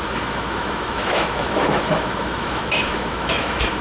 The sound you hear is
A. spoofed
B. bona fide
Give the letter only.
A